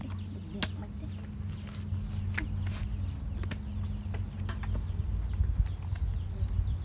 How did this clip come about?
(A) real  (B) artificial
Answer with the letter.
A